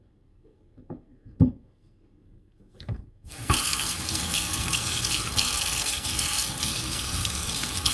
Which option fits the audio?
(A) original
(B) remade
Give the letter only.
B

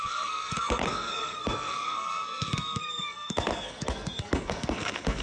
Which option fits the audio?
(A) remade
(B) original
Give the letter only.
A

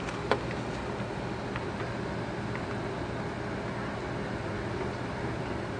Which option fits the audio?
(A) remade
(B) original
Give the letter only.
B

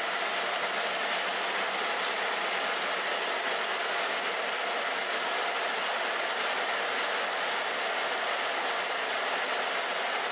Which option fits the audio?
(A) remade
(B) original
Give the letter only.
B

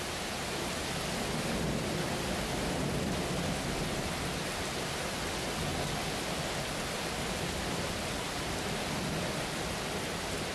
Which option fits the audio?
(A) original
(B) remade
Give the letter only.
A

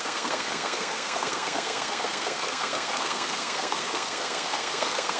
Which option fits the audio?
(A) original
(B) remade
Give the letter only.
B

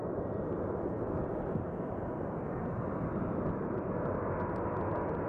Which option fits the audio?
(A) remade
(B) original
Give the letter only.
B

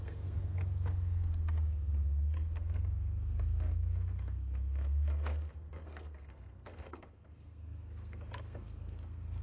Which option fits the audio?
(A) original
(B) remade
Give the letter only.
B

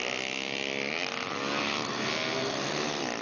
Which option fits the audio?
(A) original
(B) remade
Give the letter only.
A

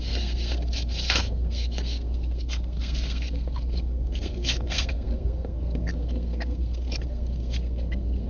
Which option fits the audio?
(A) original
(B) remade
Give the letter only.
B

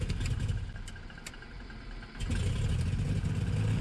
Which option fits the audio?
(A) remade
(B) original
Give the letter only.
B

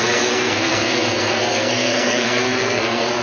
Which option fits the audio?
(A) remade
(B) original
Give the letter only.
A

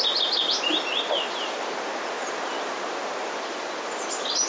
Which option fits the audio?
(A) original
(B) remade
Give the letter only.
A